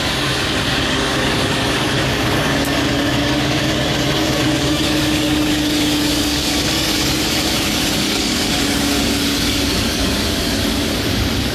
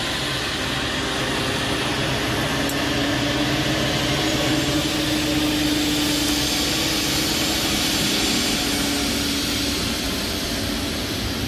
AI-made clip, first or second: first